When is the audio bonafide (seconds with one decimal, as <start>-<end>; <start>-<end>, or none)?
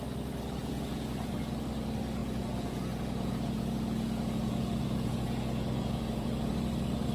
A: 0.0-0.6; 1.3-2.2; 6.5-7.1